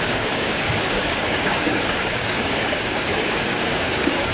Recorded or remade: remade